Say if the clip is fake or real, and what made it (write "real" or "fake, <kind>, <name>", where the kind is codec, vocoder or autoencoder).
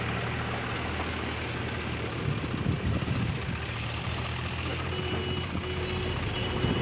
real